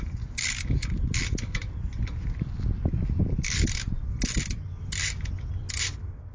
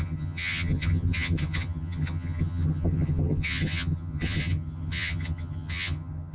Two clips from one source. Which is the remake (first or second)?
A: second